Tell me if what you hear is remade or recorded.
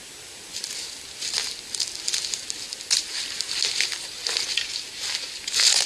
recorded